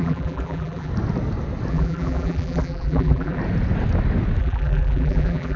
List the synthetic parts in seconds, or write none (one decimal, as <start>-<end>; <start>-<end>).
0.0-0.9; 1.7-3.4; 4.4-5.6